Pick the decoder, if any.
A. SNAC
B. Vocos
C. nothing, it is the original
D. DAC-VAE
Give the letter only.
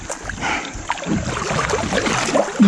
C